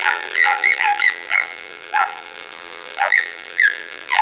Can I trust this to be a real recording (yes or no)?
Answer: no